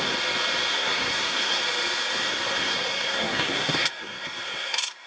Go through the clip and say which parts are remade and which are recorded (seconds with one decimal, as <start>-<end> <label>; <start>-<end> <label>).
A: 0.0-0.7 recorded; 0.7-1.6 remade; 1.6-2.3 recorded; 2.3-5.1 remade